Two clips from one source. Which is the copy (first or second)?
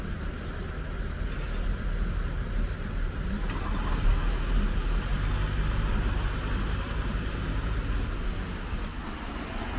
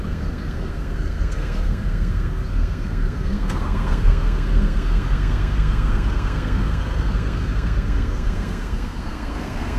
second